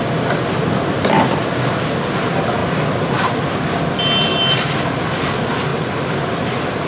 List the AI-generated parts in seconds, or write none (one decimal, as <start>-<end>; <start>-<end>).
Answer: 2.6-3.8; 4.3-4.9; 5.7-6.4